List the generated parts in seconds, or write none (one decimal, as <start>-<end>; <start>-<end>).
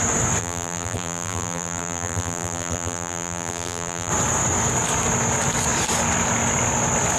0.4-4.1